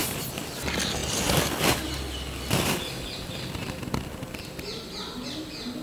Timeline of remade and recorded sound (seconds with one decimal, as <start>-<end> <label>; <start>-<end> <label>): 0.0-5.8 recorded